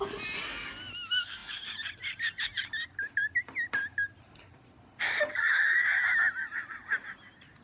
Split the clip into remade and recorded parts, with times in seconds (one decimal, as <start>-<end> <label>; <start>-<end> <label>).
0.0-7.6 recorded